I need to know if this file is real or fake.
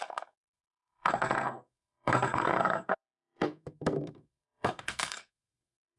fake